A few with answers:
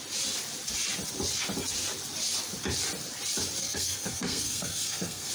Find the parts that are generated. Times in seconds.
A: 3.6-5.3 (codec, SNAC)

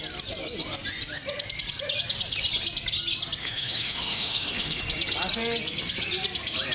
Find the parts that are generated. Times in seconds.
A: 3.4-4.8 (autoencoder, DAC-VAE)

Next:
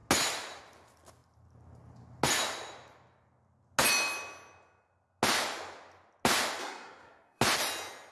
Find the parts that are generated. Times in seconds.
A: 6.6-7.4 (codec, SNAC)